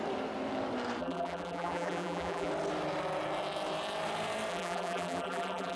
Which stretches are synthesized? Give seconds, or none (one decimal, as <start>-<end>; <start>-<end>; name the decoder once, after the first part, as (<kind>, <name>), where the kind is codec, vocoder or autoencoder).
1.0-2.5 (vocoder, BigVGAN v2); 4.5-5.8